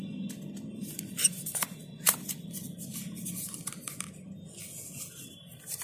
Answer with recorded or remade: recorded